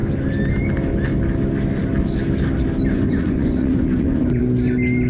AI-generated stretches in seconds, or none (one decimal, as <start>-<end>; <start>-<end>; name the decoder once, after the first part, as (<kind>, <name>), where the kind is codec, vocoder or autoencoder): 2.9-4.4 (vocoder, Vocos)